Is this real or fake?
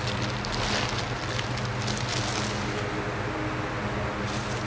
real